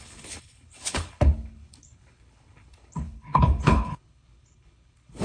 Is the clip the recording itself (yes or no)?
no